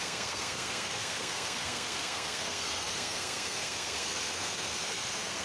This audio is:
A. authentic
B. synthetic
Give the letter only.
B